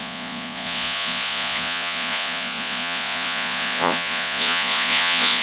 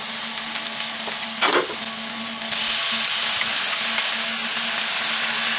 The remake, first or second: first